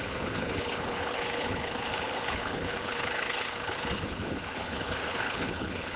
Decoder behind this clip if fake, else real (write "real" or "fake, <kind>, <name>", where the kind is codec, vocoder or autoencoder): fake, codec, HILCodec